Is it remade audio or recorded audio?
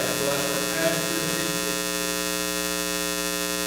recorded